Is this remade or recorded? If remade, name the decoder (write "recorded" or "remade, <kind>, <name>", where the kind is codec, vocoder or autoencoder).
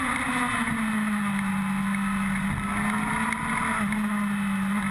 recorded